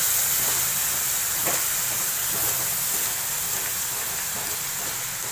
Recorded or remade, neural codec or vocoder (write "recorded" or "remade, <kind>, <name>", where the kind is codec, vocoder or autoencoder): recorded